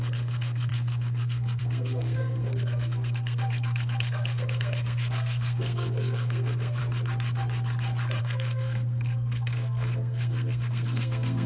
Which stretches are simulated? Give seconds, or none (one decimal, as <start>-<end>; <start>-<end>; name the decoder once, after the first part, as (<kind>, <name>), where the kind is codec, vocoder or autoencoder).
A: 0.0-6.8 (codec, SNAC); 8.2-11.5